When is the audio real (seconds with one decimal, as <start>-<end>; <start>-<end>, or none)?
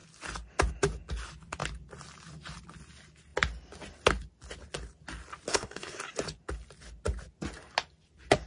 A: 0.0-5.5; 6.0-8.5